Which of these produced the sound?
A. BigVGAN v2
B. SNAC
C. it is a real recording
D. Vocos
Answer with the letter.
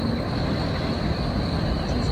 C